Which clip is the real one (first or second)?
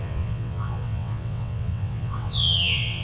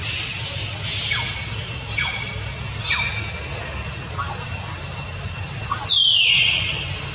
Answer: second